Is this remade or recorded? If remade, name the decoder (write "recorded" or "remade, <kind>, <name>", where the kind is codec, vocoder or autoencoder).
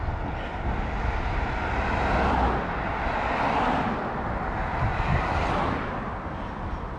recorded